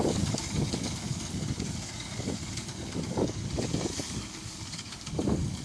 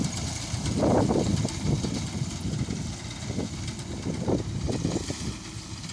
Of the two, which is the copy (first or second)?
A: first